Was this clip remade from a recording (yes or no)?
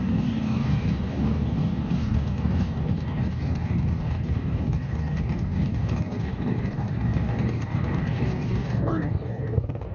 yes